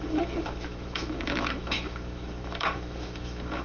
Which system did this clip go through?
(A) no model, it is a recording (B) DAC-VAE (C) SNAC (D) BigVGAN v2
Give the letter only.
B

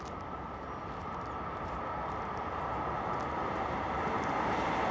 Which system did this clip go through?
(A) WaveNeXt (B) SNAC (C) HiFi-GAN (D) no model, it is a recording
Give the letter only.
D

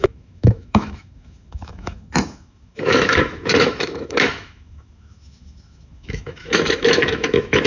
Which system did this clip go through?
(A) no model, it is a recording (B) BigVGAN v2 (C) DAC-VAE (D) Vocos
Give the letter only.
C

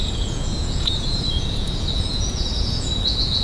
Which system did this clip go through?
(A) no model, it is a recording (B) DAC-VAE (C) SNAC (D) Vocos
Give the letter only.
D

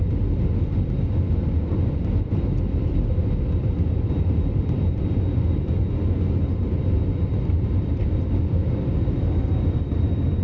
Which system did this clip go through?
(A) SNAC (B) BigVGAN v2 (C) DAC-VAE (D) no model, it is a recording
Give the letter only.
D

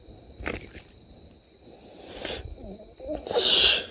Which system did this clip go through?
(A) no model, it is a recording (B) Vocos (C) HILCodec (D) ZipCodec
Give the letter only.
A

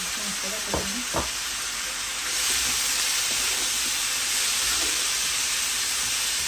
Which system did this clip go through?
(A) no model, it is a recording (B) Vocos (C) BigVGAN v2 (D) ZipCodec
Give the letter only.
C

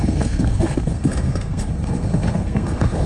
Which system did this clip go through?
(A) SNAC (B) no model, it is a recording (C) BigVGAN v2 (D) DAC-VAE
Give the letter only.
A